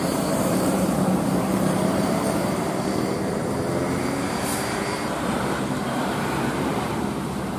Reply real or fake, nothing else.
fake